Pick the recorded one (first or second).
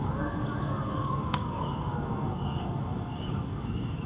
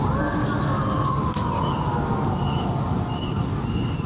second